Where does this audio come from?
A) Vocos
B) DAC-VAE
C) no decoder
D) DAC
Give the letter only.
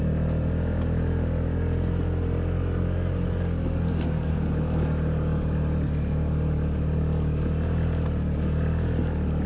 C